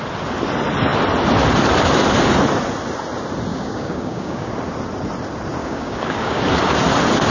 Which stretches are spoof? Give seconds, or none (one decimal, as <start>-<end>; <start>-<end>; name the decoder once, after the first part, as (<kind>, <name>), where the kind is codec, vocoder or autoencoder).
3.5-4.5 (codec, DAC); 5.6-6.4